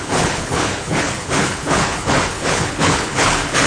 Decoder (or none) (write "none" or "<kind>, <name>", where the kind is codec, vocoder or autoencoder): codec, HILCodec